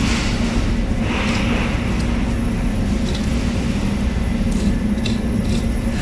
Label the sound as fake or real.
real